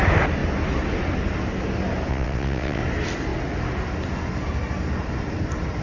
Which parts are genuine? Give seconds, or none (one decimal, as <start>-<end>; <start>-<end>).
0.0-2.1; 2.8-5.8